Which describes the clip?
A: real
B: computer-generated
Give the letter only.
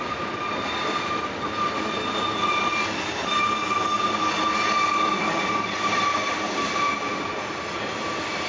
A